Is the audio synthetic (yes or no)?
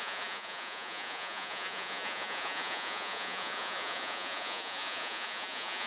yes